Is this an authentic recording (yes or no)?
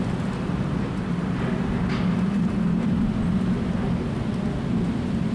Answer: yes